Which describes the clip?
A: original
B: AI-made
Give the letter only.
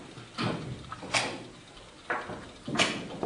A